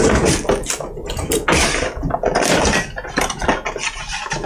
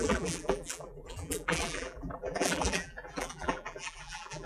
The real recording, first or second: first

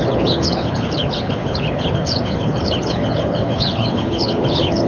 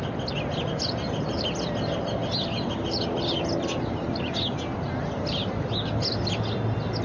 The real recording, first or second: second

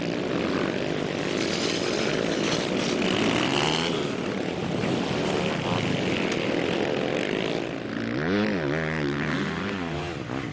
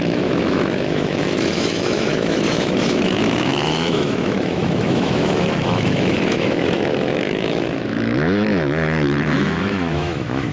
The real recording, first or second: first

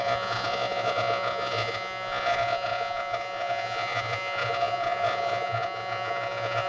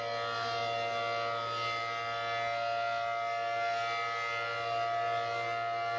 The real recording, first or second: second